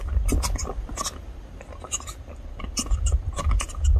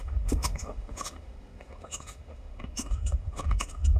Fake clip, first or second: second